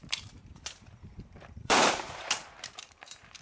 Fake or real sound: fake